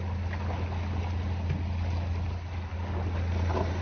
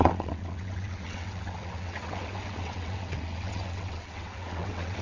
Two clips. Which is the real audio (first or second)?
first